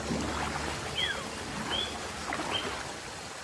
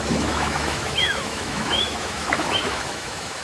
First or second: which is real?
first